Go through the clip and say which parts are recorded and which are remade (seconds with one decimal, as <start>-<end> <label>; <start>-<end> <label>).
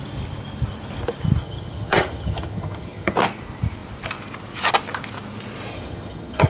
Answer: 0.0-1.4 recorded; 1.4-3.1 remade; 3.1-5.7 recorded; 5.7-6.5 remade